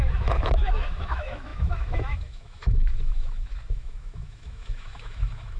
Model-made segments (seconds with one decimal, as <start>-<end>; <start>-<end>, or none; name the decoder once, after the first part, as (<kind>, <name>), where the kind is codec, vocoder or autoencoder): 0.0-5.6 (autoencoder, DAC-VAE)